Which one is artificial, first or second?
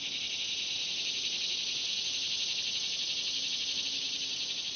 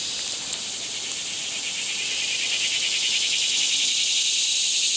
second